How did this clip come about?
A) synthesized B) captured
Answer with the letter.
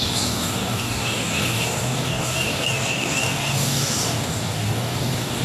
A